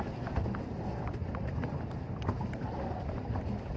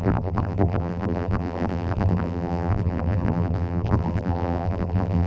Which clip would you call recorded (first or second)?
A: first